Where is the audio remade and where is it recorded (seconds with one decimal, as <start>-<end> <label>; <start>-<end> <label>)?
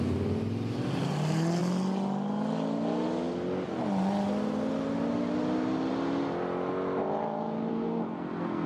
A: 0.0-7.7 recorded; 7.7-8.7 remade